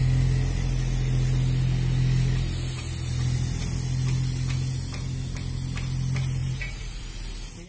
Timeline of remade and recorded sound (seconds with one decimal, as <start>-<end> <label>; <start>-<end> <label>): 0.0-6.4 recorded; 6.4-7.1 remade; 7.1-7.7 recorded